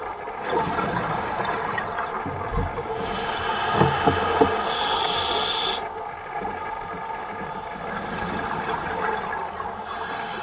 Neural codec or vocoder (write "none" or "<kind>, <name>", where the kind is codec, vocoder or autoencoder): none